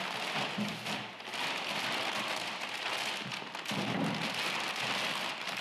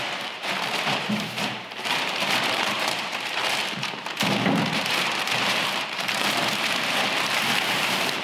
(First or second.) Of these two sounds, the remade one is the second